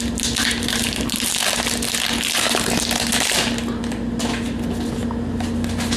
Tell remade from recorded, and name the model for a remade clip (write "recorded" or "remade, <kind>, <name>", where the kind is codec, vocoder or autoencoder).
recorded